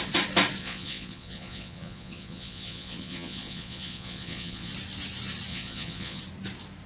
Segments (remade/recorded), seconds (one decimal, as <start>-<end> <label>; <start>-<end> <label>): 0.0-0.6 recorded; 0.6-4.7 remade; 4.7-5.5 recorded; 5.5-6.2 remade; 6.2-6.9 recorded